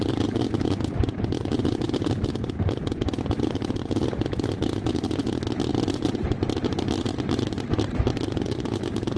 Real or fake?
real